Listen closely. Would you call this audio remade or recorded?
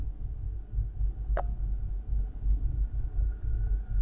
recorded